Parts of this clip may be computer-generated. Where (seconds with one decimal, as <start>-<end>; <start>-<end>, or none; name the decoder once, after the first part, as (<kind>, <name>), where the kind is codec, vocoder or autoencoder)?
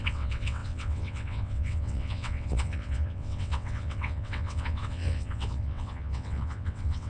0.0-7.1 (vocoder, WaveNeXt)